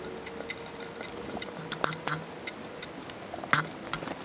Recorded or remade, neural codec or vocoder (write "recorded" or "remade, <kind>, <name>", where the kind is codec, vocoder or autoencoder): recorded